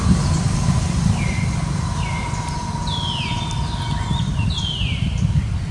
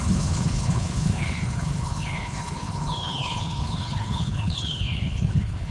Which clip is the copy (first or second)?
second